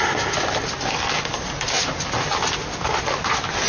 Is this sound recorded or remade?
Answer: recorded